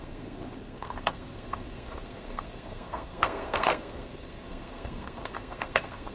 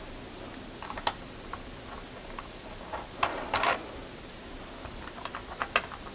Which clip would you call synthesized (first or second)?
first